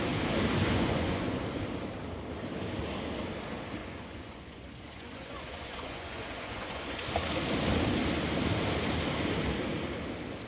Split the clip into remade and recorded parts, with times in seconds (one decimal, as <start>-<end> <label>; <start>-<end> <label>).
0.0-0.6 recorded; 0.6-1.4 remade; 1.4-3.8 recorded; 3.8-7.1 remade; 7.1-10.5 recorded